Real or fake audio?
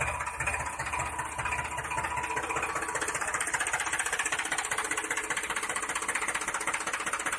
real